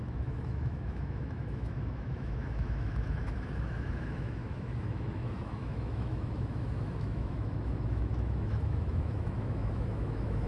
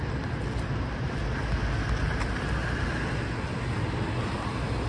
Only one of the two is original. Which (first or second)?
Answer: second